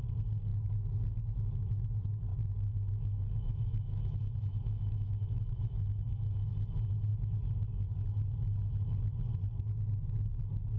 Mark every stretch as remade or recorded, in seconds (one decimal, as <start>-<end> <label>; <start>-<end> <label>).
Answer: 0.0-2.3 recorded; 2.3-4.0 remade; 4.0-4.5 recorded; 4.5-6.5 remade; 6.5-10.8 recorded